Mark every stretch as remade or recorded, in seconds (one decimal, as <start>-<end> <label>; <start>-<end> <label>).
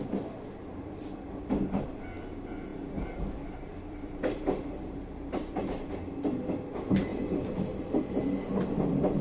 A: 0.0-2.7 recorded; 2.7-5.9 remade; 5.9-7.1 recorded; 7.1-8.0 remade; 8.0-9.2 recorded